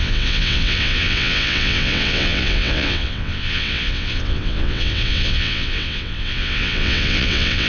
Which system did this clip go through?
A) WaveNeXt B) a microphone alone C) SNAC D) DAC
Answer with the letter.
A